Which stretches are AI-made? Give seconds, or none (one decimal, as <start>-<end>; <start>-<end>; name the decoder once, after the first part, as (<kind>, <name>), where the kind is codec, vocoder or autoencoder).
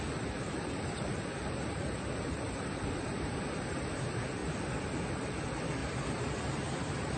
0.0-4.4 (vocoder, BigVGAN v2); 5.1-5.8; 6.3-7.2